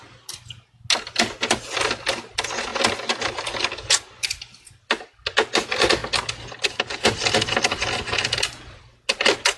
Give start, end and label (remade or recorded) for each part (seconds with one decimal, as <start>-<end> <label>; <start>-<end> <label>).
0.0-9.6 recorded